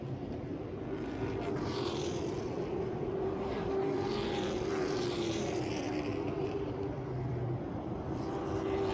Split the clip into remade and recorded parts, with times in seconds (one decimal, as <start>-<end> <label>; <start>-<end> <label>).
0.0-0.7 remade; 0.7-1.5 recorded; 1.5-8.9 remade